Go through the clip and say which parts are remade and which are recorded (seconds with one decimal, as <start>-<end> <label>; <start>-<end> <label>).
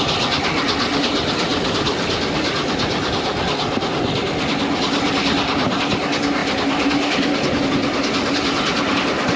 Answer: 0.0-9.4 recorded